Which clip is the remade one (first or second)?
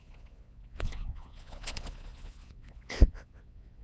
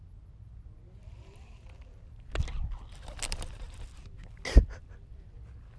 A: first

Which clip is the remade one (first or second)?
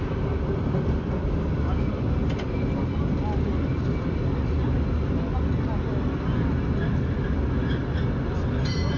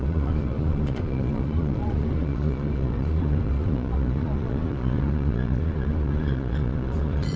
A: second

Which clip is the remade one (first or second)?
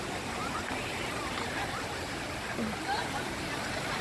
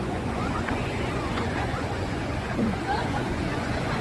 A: second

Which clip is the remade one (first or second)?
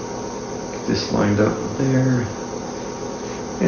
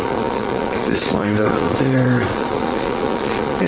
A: second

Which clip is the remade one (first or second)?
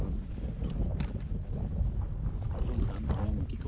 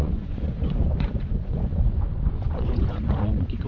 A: second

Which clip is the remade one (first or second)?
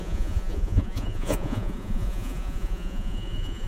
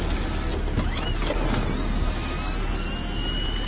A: first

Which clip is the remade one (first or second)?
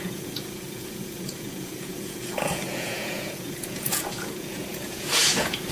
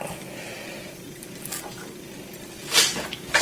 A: first